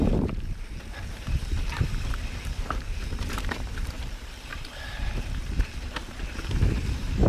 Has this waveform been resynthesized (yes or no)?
yes